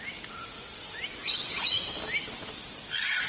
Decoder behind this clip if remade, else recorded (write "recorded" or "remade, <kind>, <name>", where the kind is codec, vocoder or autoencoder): recorded